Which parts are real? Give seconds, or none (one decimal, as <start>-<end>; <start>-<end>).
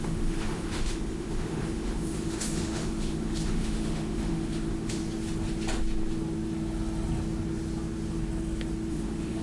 5.0-8.9